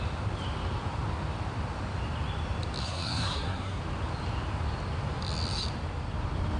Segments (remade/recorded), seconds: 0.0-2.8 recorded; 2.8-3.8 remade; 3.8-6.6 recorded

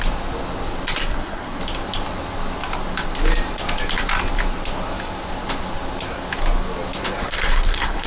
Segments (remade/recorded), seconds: 0.0-1.0 recorded; 1.0-1.6 remade; 1.6-7.2 recorded; 7.2-8.1 remade

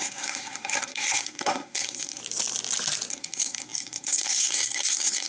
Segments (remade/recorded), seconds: 0.0-2.2 remade; 2.2-3.1 recorded; 3.1-5.3 remade

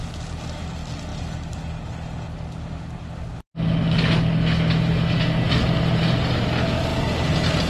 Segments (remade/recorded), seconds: 0.0-7.7 recorded

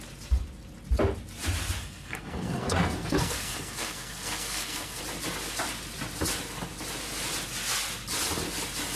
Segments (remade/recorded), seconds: 0.0-1.8 recorded; 1.8-5.0 remade; 5.0-9.0 recorded

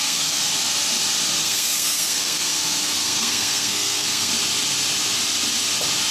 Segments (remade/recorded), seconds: 0.0-0.5 remade; 0.5-1.4 recorded; 1.4-4.3 remade; 4.3-6.1 recorded